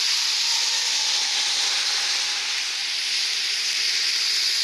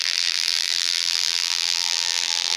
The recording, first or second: first